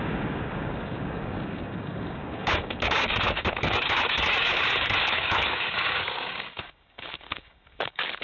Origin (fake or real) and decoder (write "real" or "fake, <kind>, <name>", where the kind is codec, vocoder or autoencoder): fake, codec, DAC